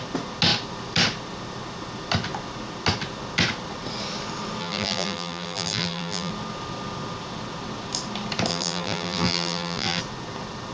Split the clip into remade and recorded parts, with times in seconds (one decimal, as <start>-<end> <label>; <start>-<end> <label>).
0.0-4.6 recorded; 4.6-6.3 remade; 6.3-8.5 recorded; 8.5-10.0 remade; 10.0-10.7 recorded